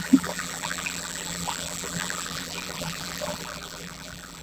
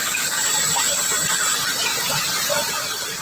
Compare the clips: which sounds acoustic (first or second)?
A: second